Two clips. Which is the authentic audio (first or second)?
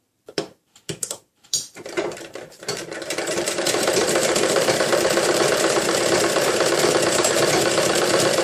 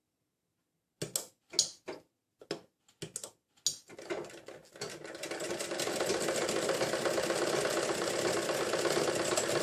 second